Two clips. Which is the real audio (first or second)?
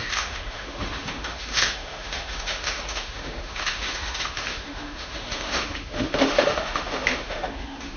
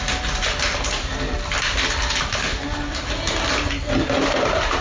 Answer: second